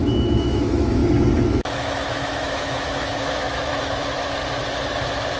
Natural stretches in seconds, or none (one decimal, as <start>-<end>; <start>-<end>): 1.0-1.5; 4.2-5.4